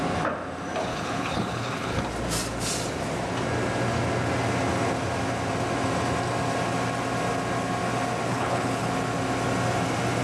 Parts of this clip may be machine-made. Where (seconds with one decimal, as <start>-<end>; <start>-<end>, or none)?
0.9-2.0; 8.3-8.9